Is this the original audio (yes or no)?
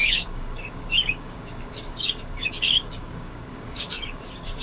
no